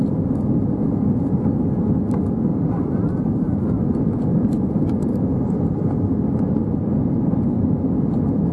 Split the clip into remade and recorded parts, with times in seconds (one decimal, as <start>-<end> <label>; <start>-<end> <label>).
0.0-2.5 recorded; 2.5-3.8 remade; 3.8-4.3 recorded; 4.3-6.2 remade; 6.2-8.5 recorded